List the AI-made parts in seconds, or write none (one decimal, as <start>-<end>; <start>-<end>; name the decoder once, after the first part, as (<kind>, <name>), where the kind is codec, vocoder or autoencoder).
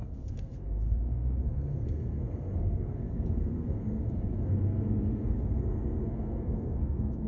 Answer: 0.0-7.3 (codec, SNAC)